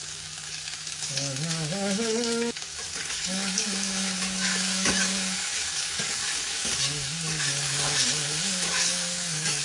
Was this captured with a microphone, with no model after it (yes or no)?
no